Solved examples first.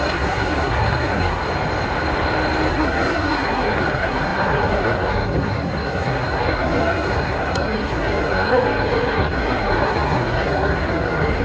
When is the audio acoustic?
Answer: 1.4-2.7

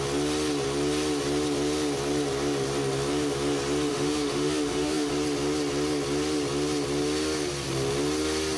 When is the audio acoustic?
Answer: 0.0-3.9; 5.1-8.6

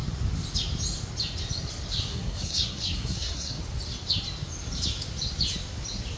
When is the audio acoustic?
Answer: 0.0-1.9; 3.6-6.2

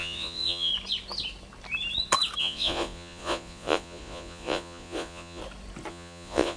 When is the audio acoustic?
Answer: 0.7-2.4; 5.4-5.9

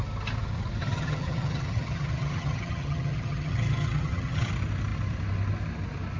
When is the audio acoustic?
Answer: 0.0-0.8; 4.5-6.2